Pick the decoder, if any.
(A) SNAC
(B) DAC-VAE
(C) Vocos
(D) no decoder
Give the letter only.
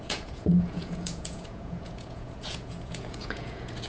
C